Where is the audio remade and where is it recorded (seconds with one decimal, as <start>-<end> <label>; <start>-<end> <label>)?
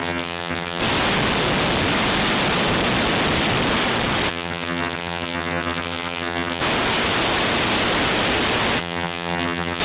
0.0-0.8 remade; 0.8-4.3 recorded; 4.3-6.6 remade; 6.6-8.8 recorded; 8.8-9.8 remade